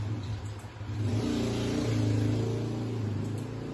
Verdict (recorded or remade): recorded